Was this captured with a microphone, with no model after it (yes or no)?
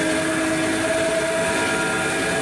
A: yes